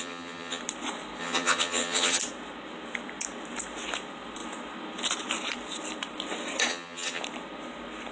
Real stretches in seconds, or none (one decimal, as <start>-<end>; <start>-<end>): 0.6-1.2; 2.2-6.7; 7.2-8.1

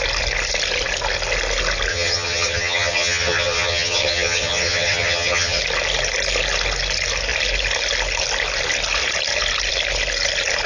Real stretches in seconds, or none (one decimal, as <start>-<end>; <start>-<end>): 0.0-1.9; 5.6-10.7

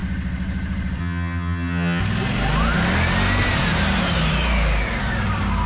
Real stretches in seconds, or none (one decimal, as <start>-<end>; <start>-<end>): 0.0-1.0; 2.0-5.7

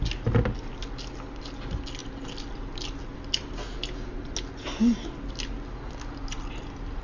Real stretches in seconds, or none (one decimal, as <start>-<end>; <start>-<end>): 0.0-7.0

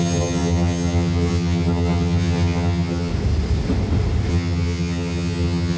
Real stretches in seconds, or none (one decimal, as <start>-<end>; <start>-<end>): 3.1-4.3